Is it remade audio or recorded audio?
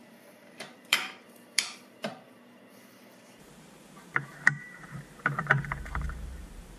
remade